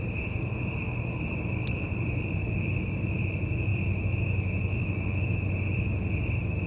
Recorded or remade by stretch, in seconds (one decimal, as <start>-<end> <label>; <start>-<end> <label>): 0.0-3.7 recorded; 3.7-5.2 remade; 5.2-6.7 recorded